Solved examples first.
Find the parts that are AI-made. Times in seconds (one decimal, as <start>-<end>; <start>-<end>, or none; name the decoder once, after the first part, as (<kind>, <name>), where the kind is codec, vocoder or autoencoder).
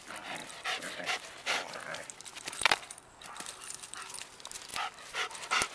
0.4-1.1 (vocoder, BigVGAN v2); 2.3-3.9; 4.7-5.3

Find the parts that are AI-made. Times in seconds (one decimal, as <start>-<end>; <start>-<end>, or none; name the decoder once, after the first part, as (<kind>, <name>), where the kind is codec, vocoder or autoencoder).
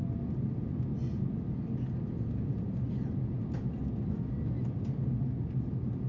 none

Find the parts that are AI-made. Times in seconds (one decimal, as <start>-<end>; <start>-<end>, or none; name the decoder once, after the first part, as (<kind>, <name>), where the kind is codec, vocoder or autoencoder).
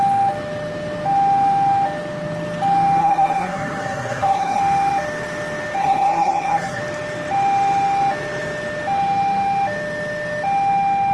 3.0-4.6 (codec, SNAC); 5.8-6.8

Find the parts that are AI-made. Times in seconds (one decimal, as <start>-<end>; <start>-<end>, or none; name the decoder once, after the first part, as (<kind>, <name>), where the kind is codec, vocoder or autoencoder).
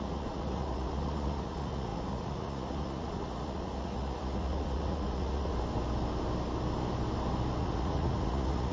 0.0-5.5 (vocoder, Vocos); 7.6-8.7